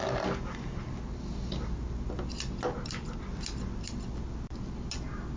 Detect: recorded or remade recorded